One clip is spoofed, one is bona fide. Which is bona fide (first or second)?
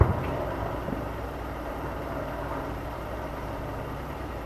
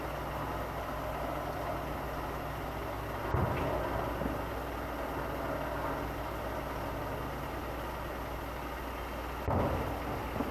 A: second